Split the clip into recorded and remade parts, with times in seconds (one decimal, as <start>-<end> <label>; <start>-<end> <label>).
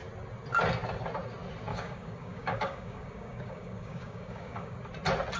0.0-1.7 recorded; 1.7-4.8 remade; 4.8-5.4 recorded